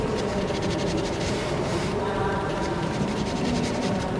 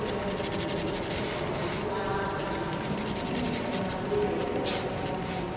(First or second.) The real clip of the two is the second